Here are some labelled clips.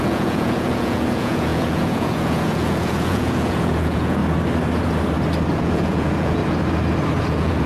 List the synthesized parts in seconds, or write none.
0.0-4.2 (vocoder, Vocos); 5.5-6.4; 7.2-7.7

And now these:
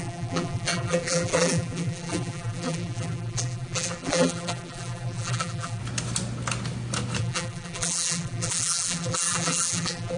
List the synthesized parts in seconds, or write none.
0.0-5.8 (vocoder, BigVGAN v2); 7.2-10.2

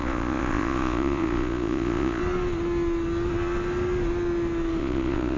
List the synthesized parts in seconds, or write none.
0.0-2.2 (vocoder, Vocos); 4.8-5.4